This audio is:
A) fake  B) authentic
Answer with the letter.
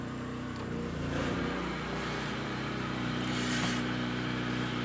A